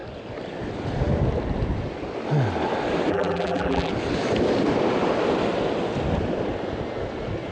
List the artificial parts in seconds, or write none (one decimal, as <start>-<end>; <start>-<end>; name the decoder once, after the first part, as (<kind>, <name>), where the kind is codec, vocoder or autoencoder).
3.1-3.9 (vocoder, BigVGAN v2)